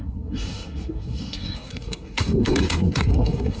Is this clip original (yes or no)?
no